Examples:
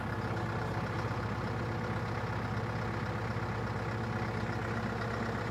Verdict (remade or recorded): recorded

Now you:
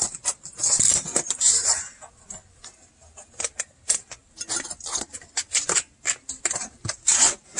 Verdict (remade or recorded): recorded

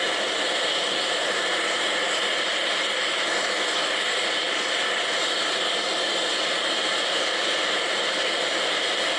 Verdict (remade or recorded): recorded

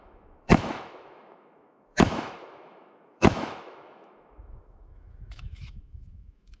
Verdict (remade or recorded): remade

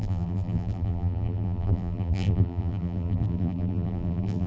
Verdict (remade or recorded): remade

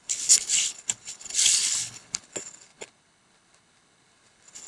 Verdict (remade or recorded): remade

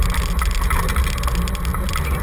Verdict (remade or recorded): recorded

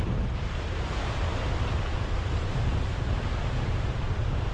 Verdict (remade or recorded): remade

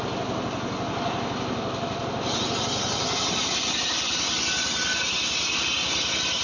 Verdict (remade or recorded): recorded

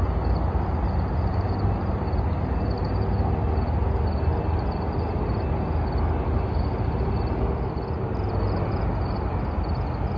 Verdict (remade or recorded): recorded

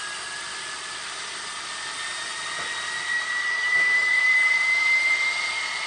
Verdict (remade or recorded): remade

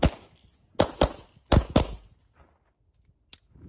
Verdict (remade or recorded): recorded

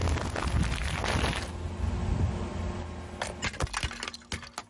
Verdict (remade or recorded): recorded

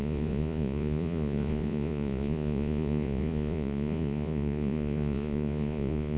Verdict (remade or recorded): remade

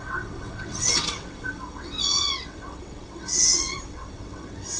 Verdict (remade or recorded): remade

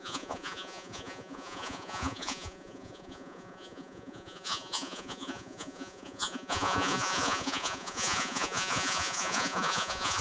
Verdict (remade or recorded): remade